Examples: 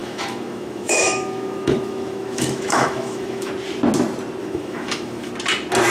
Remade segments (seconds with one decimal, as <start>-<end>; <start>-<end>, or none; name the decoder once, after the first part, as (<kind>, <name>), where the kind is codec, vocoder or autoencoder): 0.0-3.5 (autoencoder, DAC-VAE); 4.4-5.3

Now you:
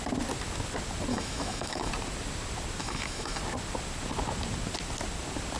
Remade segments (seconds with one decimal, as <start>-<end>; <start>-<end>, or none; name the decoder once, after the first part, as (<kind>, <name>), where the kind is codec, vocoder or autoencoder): 1.1-1.9 (autoencoder, DAC-VAE); 2.8-3.4

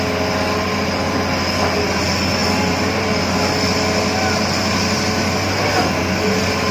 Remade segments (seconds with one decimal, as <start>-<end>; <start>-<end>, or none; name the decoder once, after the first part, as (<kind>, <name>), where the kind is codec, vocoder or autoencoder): none

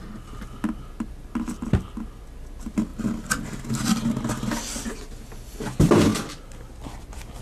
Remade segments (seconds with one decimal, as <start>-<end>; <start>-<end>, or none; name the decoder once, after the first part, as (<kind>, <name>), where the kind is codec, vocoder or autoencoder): none